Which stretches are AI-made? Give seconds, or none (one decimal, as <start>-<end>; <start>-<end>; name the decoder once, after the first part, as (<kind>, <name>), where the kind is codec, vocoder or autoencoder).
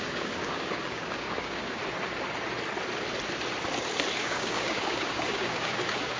0.0-1.8 (codec, DAC); 4.2-6.2